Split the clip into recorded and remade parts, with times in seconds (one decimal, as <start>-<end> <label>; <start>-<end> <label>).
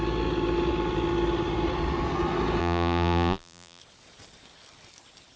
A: 0.0-2.6 recorded; 2.6-3.8 remade; 3.8-5.4 recorded